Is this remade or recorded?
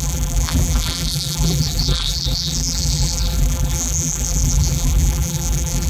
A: remade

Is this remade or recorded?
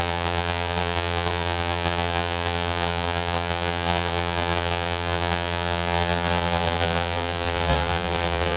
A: remade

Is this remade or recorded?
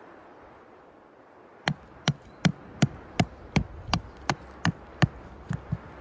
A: recorded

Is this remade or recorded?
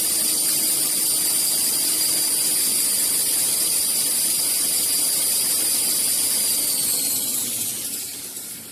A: recorded